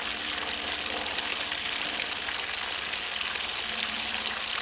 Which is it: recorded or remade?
recorded